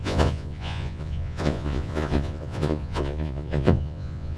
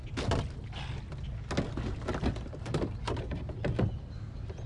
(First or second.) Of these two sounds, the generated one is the first